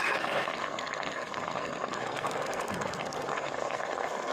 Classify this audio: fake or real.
fake